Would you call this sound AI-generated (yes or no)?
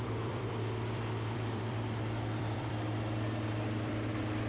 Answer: yes